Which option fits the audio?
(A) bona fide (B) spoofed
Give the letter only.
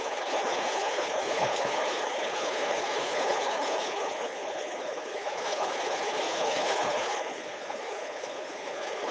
B